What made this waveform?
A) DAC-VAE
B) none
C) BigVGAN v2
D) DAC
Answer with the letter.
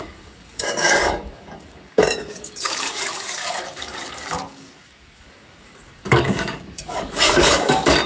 D